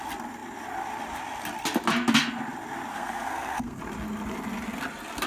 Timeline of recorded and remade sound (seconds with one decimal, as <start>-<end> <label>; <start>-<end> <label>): 0.0-2.9 recorded; 2.9-3.8 remade; 3.8-5.3 recorded